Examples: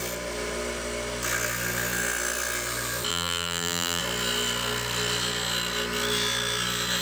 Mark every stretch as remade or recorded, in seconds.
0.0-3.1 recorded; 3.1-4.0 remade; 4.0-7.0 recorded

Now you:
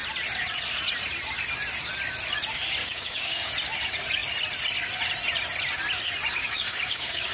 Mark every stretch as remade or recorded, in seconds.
0.0-2.8 recorded; 2.8-3.5 remade; 3.5-6.4 recorded; 6.4-7.3 remade

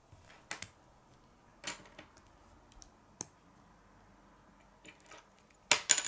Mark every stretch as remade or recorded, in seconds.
0.0-6.1 recorded

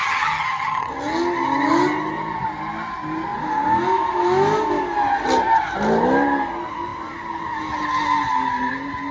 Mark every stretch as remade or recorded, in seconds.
0.0-0.9 remade; 0.9-9.1 recorded

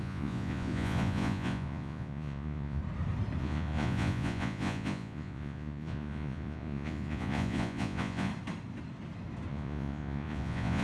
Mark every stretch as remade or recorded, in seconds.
0.0-2.8 remade; 2.8-3.4 recorded; 3.4-8.3 remade; 8.3-9.5 recorded; 9.5-10.8 remade

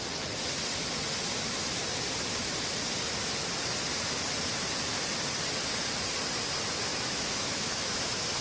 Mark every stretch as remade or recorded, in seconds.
0.0-6.9 recorded; 6.9-8.0 remade; 8.0-8.4 recorded

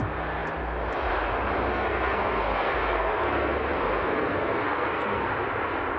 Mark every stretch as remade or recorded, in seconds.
0.0-1.7 recorded; 1.7-5.3 remade; 5.3-6.0 recorded

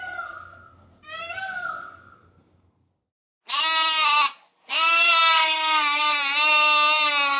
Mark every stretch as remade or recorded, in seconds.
0.0-2.9 remade; 2.9-4.6 recorded; 4.6-7.4 remade